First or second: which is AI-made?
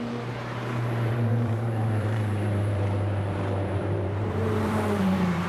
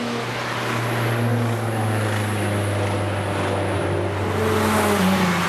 first